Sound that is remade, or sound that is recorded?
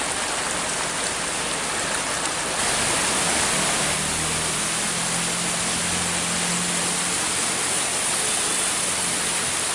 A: recorded